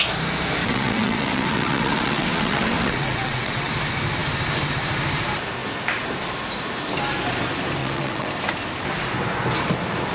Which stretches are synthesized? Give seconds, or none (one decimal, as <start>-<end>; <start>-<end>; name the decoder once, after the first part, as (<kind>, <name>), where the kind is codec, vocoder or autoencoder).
0.6-3.7 (vocoder, WaveNeXt); 7.8-8.3